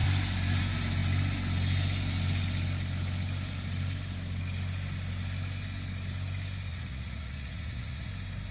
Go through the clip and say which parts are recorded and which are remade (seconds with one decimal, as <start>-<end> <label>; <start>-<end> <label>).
0.0-6.7 recorded; 6.7-8.1 remade; 8.1-8.5 recorded